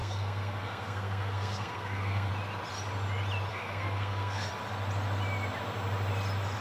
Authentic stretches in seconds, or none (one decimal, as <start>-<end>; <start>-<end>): 2.3-3.5; 4.5-6.6